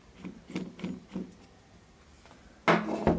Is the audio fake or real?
real